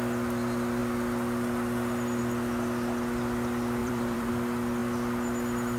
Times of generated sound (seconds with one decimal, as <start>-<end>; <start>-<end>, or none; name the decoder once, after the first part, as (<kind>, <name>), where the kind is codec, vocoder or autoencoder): 3.8-4.3 (vocoder, BigVGAN v2)